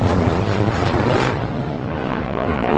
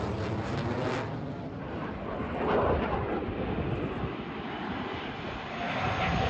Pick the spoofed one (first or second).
first